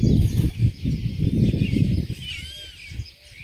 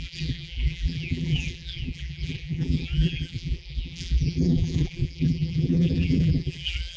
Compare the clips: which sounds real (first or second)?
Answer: first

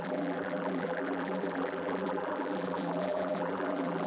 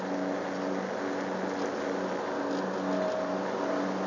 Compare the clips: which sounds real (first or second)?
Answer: second